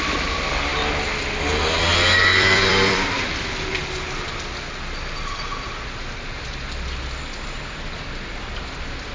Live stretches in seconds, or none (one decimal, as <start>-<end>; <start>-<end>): 0.0-1.9; 3.3-9.1